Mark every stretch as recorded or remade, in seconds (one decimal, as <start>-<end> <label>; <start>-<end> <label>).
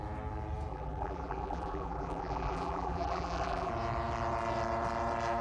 0.0-0.7 recorded; 0.7-3.7 remade; 3.7-5.4 recorded